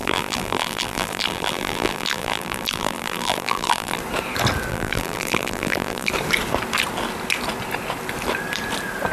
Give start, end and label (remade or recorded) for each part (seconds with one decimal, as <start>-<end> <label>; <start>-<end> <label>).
0.0-4.0 remade; 4.0-4.7 recorded; 4.7-6.1 remade; 6.1-9.1 recorded